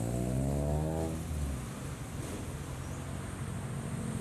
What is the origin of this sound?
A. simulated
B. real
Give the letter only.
B